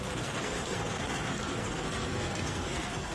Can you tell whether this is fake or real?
fake